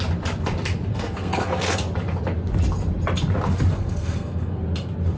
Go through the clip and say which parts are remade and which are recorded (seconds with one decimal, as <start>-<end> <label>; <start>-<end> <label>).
0.0-0.9 recorded; 0.9-1.8 remade; 1.8-3.7 recorded; 3.7-4.6 remade; 4.6-5.2 recorded